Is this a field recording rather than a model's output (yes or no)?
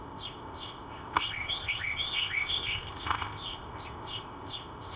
no